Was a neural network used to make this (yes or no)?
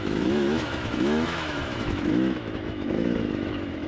yes